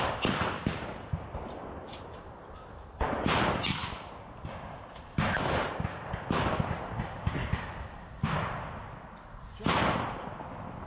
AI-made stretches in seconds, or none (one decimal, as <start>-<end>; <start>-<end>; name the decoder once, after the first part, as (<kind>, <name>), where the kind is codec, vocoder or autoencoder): 0.0-10.9 (vocoder, BigVGAN v2)

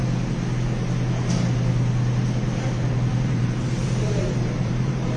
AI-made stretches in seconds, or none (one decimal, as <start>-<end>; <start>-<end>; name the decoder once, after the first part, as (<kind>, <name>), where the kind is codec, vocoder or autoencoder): 3.1-5.2 (vocoder, BigVGAN v2)

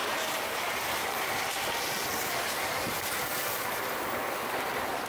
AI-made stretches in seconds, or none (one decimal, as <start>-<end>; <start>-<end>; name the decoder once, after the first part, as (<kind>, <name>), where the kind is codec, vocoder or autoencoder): 0.0-3.1 (vocoder, BigVGAN v2)

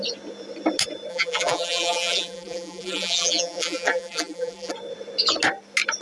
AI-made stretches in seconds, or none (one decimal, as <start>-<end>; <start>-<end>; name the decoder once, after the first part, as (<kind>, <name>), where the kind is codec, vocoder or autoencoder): 1.1-4.7 (vocoder, BigVGAN v2)

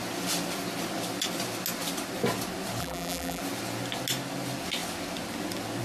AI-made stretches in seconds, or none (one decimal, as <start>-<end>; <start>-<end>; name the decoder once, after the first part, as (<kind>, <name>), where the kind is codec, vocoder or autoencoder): 2.8-3.4 (vocoder, BigVGAN v2)

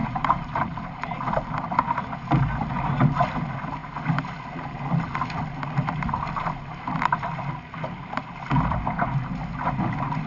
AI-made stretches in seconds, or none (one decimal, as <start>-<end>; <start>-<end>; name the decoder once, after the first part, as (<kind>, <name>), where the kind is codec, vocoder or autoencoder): 0.0-1.1 (vocoder, BigVGAN v2)

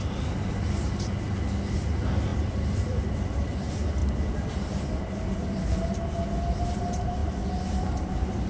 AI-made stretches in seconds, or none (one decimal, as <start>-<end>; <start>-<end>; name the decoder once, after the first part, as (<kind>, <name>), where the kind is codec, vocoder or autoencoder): 2.3-3.1 (vocoder, BigVGAN v2)

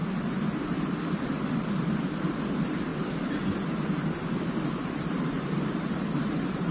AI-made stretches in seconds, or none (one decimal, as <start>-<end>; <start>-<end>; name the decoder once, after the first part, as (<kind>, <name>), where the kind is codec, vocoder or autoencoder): 1.5-2.9 (vocoder, BigVGAN v2); 4.9-6.7